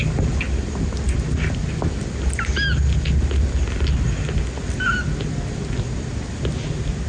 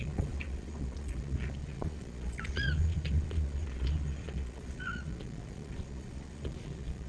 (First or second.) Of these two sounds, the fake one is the second